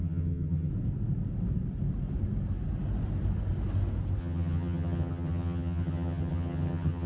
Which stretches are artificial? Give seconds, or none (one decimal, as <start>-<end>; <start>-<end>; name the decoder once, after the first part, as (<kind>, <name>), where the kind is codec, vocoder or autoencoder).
0.0-0.7 (vocoder, HiFi-GAN); 4.2-7.1